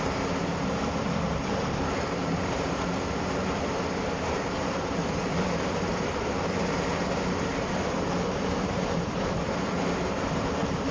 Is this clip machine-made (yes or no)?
yes